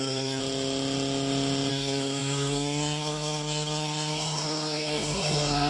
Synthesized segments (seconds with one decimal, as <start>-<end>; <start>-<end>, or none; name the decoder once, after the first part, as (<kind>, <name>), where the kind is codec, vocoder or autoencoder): 0.0-0.4 (codec, SNAC); 1.7-5.7